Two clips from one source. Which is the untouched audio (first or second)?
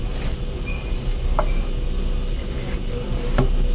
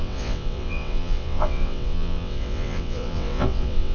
first